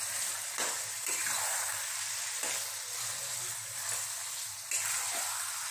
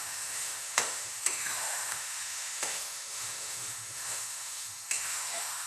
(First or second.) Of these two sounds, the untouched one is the first